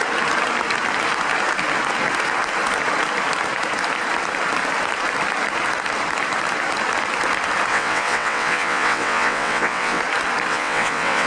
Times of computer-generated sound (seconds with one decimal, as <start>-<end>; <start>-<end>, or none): 7.7-10.0; 10.5-11.3